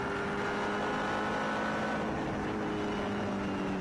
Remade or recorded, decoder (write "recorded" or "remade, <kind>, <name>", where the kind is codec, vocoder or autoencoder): recorded